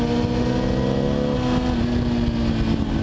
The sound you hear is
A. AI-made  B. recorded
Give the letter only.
B